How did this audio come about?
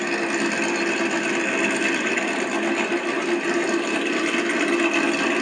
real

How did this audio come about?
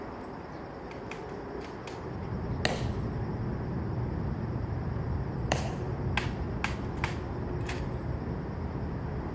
real